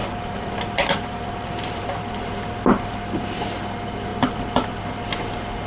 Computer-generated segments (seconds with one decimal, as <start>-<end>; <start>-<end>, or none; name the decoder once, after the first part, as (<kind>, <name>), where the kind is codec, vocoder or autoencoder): 0.0-3.4 (vocoder, BigVGAN v2); 4.1-4.8